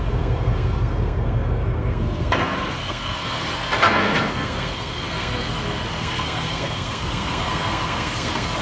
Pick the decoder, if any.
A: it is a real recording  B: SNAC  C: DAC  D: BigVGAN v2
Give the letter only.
B